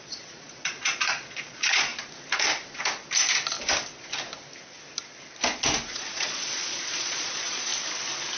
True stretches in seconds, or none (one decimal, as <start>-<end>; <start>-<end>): 1.9-5.9; 7.7-8.4